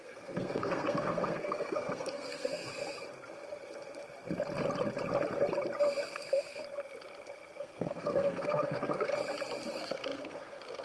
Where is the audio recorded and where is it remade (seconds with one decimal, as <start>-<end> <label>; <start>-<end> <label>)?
0.0-2.7 remade; 2.7-7.6 recorded; 7.6-9.1 remade; 9.1-9.7 recorded; 9.7-10.8 remade